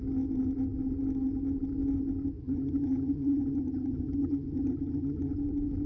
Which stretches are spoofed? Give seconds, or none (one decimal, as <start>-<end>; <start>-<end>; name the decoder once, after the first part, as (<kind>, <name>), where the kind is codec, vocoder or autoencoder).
2.4-5.3 (vocoder, HiFi-GAN)